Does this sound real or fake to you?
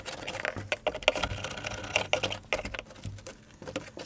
real